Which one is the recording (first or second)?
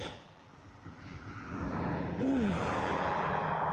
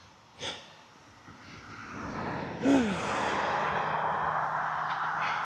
second